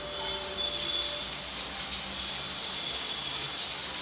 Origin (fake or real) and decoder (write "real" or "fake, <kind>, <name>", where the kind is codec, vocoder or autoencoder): real